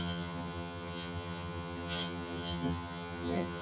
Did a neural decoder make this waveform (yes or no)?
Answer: yes